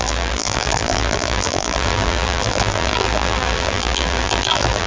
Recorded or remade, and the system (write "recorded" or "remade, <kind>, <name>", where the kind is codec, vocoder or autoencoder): remade, vocoder, BigVGAN v2